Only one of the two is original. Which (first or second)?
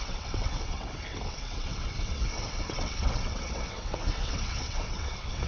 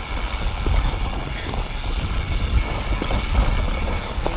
second